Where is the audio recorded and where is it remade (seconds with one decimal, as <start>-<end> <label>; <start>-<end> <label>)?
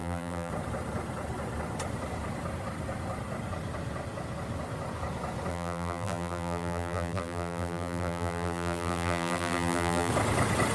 0.0-0.5 remade; 0.5-5.5 recorded; 5.5-10.1 remade; 10.1-10.7 recorded